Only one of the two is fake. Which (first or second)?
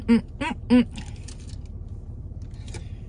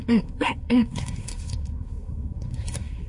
second